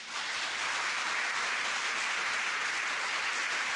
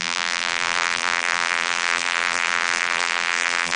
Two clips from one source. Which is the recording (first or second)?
first